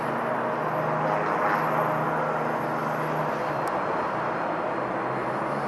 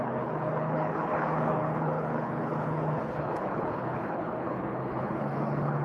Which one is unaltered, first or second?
first